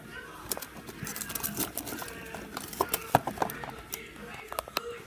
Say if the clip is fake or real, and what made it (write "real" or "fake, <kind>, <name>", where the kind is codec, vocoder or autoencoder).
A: real